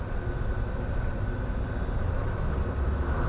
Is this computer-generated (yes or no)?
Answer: no